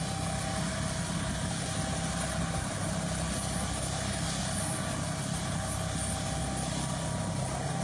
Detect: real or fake real